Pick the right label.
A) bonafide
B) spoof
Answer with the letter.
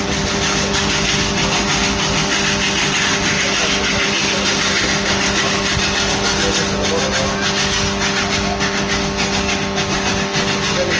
A